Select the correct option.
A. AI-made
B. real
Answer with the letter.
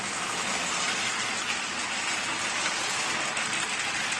B